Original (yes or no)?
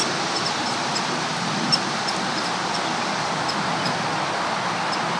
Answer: yes